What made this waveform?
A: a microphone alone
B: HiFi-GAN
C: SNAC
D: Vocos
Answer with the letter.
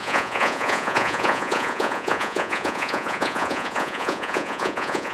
D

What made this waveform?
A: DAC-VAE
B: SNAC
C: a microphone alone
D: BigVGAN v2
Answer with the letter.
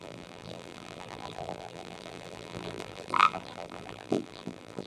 D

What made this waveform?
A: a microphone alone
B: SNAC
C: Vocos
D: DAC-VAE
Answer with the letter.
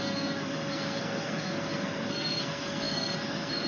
B